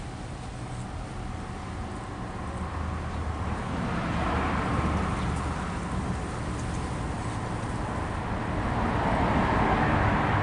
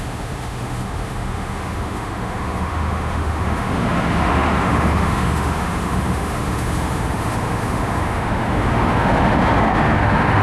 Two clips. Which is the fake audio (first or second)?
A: second